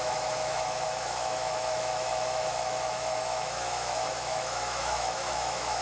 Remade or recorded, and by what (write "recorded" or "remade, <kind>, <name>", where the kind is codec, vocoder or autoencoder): remade, autoencoder, DAC-VAE